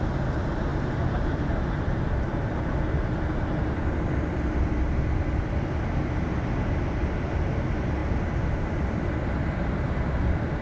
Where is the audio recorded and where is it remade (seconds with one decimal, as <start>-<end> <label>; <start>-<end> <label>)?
0.0-10.6 recorded